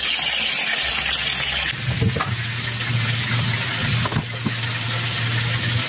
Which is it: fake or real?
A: real